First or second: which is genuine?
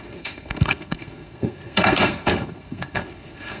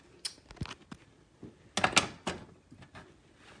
second